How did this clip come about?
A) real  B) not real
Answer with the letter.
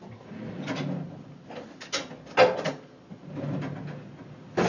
A